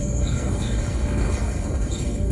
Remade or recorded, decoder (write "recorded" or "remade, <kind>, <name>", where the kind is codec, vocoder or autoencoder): remade, codec, SNAC